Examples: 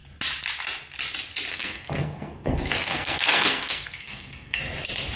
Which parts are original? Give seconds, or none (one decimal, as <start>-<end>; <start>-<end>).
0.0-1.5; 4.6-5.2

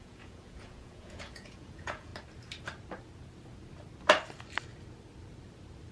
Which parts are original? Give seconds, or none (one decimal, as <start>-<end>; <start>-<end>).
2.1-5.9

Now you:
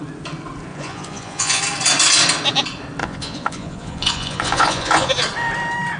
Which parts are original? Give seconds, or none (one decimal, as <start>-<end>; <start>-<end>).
0.0-0.7; 1.6-3.0; 5.1-6.0

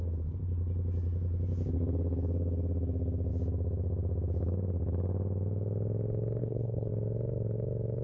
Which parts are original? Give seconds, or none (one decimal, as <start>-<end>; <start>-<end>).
0.0-6.4; 6.9-8.0

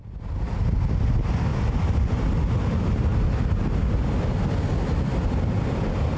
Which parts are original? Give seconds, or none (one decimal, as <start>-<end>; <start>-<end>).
0.0-6.2

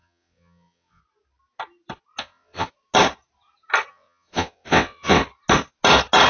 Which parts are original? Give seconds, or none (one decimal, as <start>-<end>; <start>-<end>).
1.0-2.2; 2.7-3.9; 5.2-6.3